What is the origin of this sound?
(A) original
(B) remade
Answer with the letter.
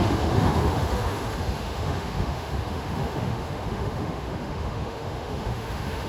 B